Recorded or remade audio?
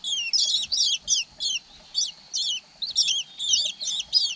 recorded